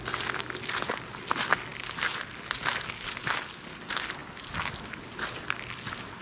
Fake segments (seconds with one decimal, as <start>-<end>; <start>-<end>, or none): none